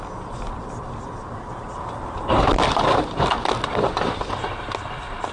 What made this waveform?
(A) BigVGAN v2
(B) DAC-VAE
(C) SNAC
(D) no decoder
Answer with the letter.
D